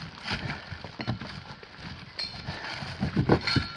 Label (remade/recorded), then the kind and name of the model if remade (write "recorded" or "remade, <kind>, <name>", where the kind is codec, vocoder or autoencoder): recorded